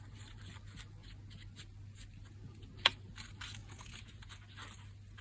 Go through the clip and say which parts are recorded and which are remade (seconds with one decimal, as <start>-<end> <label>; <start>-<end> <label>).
0.0-3.6 recorded; 3.6-4.3 remade; 4.3-5.2 recorded